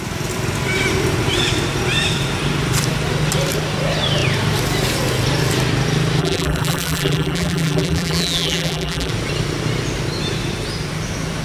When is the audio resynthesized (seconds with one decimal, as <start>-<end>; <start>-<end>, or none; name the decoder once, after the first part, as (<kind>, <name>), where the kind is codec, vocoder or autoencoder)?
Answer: 6.2-9.1 (vocoder, BigVGAN v2)